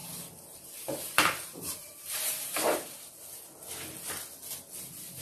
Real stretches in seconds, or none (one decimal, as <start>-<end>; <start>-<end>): 3.1-5.2